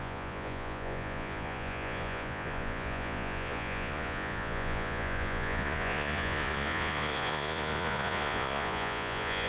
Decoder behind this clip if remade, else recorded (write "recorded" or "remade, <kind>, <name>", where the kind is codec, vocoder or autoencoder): remade, vocoder, Vocos